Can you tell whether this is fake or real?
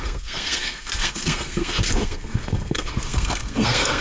fake